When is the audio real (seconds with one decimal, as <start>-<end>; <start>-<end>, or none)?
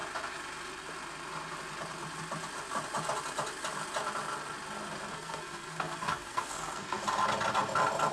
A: 0.0-5.1; 7.0-8.1